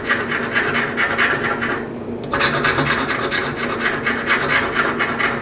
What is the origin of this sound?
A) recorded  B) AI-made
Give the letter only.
A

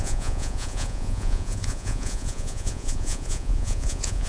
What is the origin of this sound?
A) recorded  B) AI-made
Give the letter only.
B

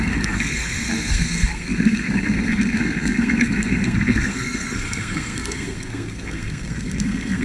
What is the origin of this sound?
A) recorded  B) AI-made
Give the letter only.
B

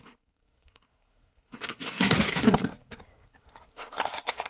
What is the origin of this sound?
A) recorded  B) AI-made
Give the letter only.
B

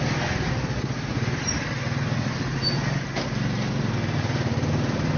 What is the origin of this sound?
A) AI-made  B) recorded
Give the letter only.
B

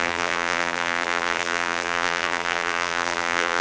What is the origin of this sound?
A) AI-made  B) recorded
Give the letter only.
A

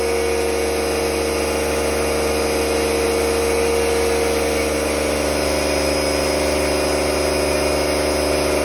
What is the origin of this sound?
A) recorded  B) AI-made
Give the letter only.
A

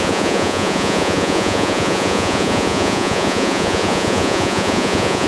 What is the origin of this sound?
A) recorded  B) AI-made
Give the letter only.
B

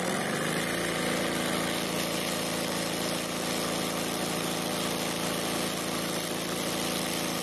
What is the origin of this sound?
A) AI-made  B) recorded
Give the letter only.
B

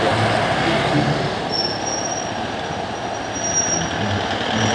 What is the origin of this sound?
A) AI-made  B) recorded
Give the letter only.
B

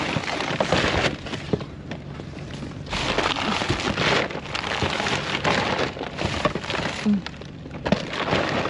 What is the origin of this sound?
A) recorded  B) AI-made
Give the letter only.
A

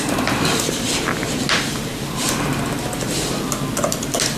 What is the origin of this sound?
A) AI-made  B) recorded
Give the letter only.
B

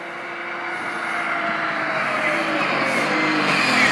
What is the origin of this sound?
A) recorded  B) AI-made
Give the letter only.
A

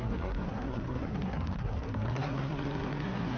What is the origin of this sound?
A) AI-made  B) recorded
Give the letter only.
A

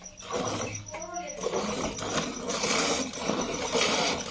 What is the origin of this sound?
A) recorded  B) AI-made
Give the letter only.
A